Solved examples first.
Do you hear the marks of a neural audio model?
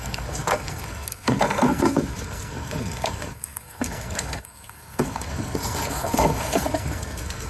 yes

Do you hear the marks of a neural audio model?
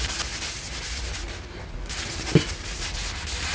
no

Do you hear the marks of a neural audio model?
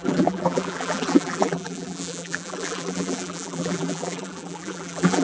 yes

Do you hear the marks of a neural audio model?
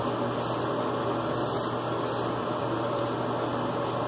no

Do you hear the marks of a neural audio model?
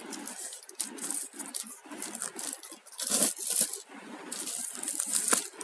no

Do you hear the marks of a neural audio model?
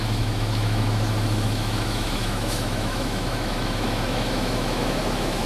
yes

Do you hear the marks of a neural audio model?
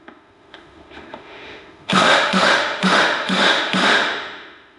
yes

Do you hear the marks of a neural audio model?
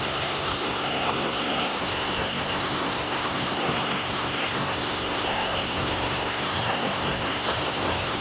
yes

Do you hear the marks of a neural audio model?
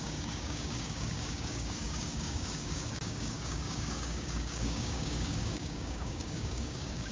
yes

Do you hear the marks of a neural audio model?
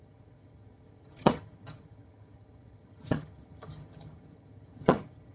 yes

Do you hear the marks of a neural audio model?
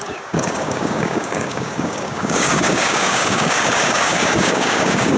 yes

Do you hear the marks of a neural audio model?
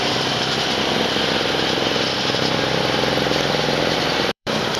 yes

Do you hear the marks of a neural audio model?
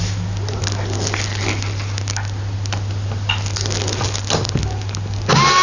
no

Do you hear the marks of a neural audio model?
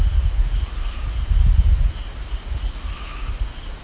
no